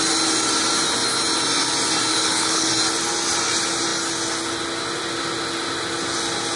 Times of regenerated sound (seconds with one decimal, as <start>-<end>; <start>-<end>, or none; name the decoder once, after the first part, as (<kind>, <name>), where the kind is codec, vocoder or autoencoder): 2.1-2.7 (codec, HILCodec)